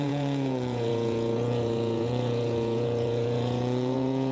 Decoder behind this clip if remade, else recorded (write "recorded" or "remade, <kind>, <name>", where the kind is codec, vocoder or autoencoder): remade, vocoder, Vocos